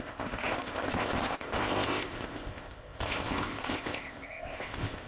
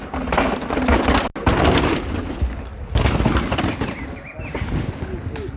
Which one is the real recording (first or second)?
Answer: second